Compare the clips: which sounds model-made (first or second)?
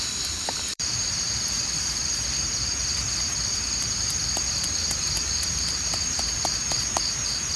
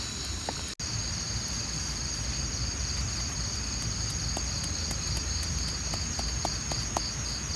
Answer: first